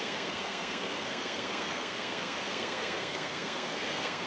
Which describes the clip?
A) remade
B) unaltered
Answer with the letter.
A